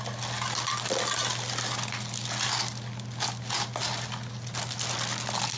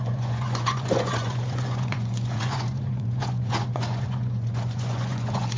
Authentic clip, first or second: first